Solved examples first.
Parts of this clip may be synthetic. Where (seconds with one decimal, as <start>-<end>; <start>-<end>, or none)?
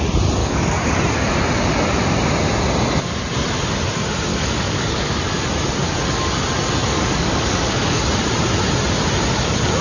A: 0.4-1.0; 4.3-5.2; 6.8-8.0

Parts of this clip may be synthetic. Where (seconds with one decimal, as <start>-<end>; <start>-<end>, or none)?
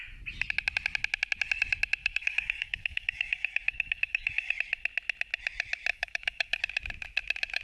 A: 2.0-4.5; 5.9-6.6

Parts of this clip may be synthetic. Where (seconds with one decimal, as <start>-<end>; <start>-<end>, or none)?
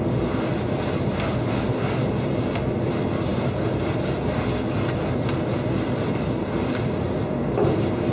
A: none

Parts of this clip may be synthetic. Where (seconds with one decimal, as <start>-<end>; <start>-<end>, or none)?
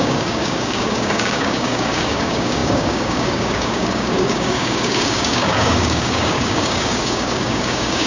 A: 0.0-8.1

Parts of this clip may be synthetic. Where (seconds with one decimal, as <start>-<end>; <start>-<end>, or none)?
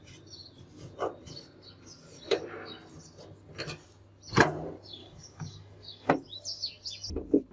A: 5.0-6.1